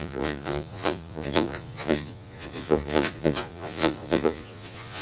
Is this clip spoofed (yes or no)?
yes